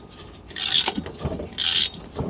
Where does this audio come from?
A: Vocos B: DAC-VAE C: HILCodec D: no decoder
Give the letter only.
D